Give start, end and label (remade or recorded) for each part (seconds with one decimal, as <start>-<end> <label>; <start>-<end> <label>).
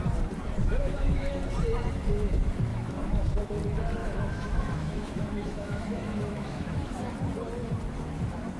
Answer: 0.0-0.6 recorded; 0.6-1.3 remade; 1.3-2.7 recorded; 2.7-3.4 remade; 3.4-4.0 recorded; 4.0-7.0 remade; 7.0-8.6 recorded